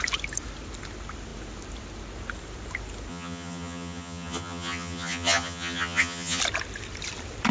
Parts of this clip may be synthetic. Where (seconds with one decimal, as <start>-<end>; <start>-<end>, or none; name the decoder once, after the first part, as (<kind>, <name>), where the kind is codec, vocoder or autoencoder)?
3.1-6.4 (vocoder, HiFi-GAN)